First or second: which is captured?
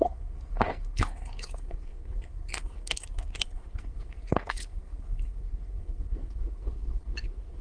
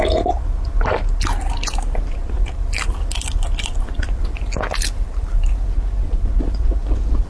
second